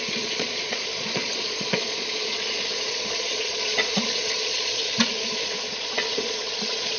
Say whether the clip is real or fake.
fake